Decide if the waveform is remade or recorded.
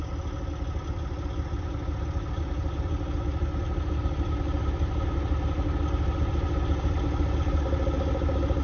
recorded